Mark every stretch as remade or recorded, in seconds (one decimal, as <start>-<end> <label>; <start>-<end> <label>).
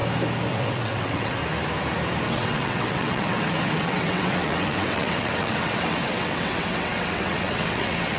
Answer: 0.0-0.5 recorded; 0.5-1.4 remade; 1.4-2.3 recorded; 2.3-8.2 remade